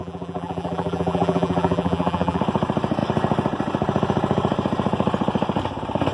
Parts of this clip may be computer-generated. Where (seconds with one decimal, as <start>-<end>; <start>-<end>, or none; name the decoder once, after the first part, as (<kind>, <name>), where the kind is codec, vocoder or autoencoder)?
0.0-2.4 (vocoder, BigVGAN v2)